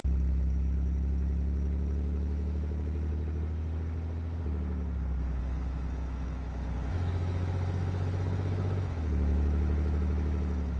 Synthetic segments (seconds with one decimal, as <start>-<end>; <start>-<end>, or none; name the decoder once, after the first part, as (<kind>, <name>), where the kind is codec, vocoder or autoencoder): 0.0-3.1 (autoencoder, DAC-VAE); 5.4-10.8